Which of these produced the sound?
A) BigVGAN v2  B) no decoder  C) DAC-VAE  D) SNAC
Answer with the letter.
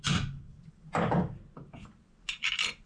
B